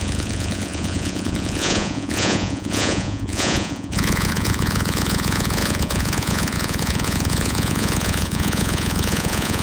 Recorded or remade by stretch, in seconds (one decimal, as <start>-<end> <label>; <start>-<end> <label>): 0.0-9.6 remade